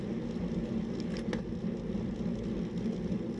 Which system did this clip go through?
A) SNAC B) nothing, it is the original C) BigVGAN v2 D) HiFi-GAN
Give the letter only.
B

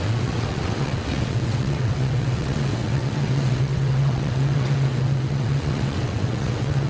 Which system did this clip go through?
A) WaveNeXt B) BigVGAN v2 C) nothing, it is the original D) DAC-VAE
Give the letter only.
A